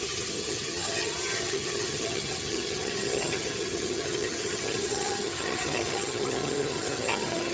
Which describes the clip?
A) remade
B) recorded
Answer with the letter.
A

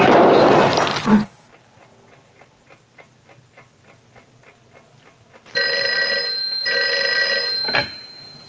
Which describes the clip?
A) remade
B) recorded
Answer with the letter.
B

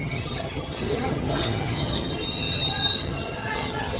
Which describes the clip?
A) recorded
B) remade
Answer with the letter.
B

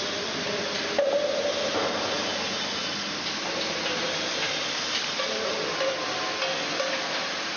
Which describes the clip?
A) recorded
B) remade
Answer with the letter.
A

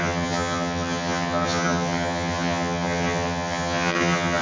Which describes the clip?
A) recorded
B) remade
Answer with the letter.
B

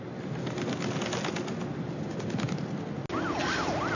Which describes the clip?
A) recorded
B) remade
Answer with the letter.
A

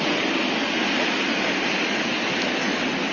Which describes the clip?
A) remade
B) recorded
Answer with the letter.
B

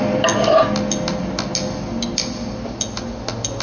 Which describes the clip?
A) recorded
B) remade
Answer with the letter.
A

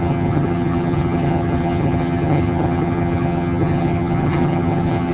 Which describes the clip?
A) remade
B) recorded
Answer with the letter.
A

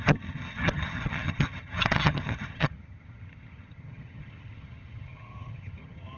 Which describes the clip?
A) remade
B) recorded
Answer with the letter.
A